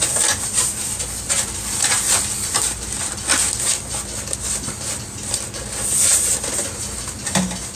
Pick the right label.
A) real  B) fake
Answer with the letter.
A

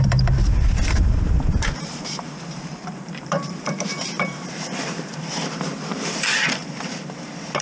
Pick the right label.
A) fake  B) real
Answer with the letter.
A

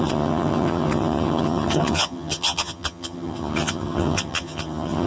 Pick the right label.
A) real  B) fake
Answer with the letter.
B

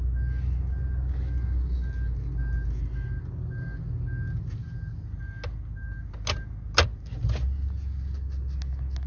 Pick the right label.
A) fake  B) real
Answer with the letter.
B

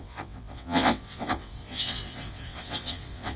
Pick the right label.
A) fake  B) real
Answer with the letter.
A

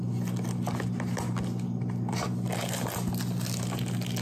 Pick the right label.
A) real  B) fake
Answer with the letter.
A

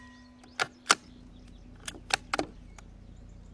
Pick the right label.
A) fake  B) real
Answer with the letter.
B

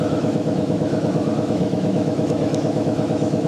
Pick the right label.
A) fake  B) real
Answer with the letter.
A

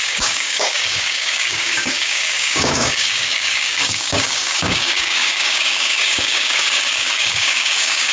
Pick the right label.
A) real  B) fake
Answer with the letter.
B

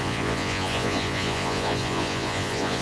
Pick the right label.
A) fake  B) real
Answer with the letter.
A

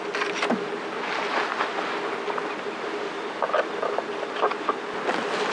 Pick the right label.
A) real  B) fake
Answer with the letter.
A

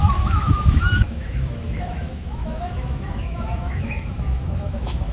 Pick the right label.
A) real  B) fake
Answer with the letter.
B